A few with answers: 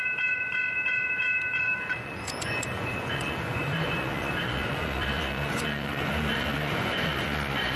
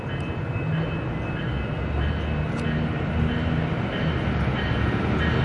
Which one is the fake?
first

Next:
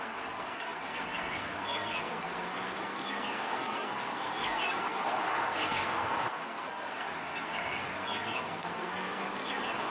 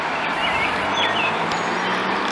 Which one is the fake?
first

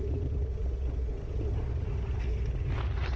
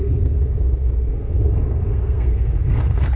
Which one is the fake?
second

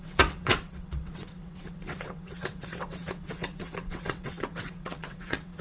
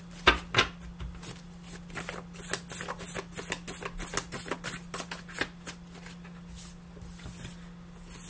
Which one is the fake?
first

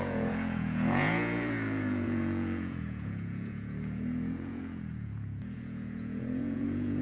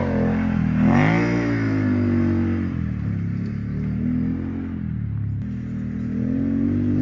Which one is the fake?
first